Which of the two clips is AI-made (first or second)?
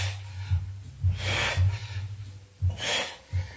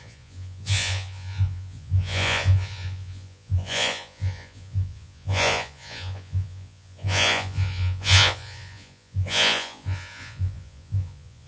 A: second